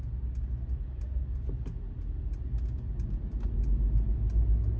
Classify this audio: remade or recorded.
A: recorded